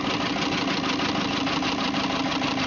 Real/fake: real